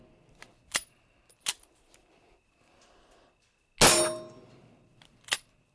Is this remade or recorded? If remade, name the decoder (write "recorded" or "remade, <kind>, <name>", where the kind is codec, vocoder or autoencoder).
recorded